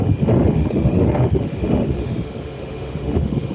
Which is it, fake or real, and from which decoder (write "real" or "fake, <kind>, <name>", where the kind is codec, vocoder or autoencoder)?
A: fake, autoencoder, DAC-VAE